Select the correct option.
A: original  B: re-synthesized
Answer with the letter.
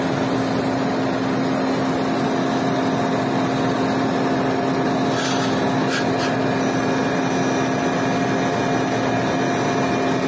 A